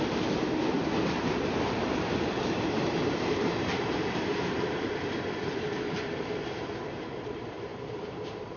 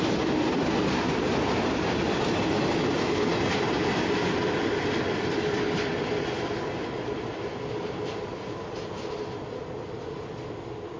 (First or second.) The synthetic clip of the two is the first